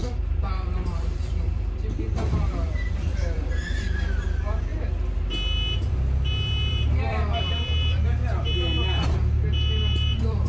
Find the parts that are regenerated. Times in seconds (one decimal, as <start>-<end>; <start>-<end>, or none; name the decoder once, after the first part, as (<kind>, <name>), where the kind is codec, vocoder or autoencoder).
0.0-4.7 (vocoder, BigVGAN v2); 6.7-8.2; 9.0-10.5